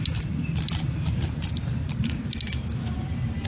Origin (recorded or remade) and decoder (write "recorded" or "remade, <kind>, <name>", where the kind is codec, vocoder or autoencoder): recorded